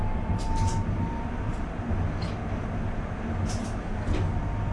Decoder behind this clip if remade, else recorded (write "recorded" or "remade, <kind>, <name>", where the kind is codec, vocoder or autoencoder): recorded